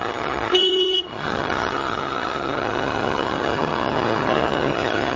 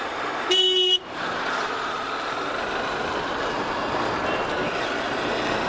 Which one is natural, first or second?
second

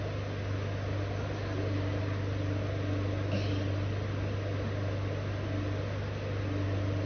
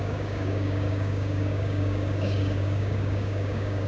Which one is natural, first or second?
first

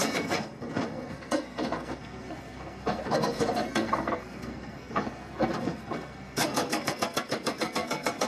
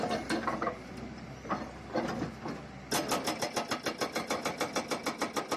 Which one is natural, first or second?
second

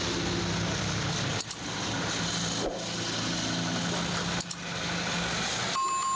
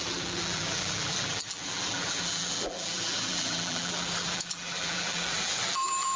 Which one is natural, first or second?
first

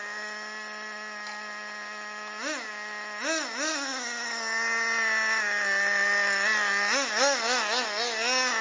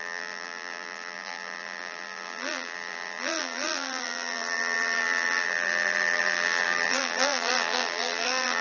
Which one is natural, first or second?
first